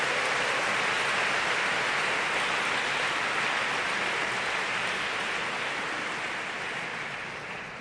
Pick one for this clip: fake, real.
real